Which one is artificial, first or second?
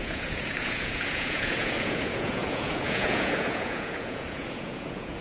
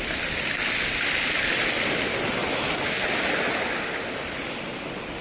first